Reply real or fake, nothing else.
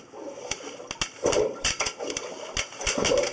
real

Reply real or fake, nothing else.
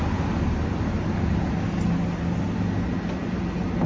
real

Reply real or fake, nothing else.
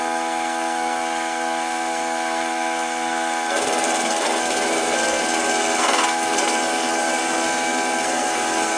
fake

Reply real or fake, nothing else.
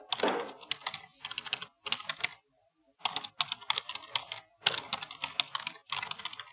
real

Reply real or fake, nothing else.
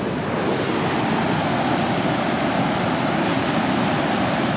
real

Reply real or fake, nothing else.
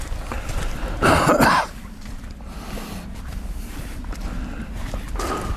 fake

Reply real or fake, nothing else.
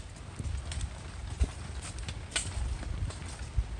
real